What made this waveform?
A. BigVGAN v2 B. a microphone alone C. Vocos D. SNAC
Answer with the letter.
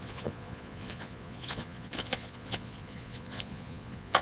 C